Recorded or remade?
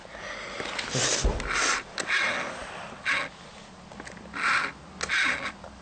recorded